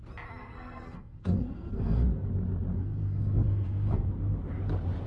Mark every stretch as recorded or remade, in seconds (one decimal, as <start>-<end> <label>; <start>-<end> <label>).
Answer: 0.0-0.4 recorded; 0.4-2.3 remade; 2.3-2.7 recorded; 2.7-4.1 remade; 4.1-5.1 recorded